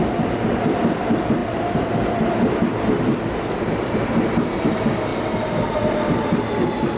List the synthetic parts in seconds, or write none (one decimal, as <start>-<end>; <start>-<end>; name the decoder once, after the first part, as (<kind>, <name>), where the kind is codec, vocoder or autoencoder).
none